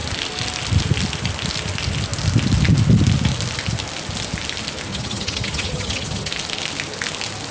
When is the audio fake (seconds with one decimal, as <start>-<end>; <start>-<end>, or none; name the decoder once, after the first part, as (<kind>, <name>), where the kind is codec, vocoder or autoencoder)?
4.9-6.3 (vocoder, HiFi-GAN)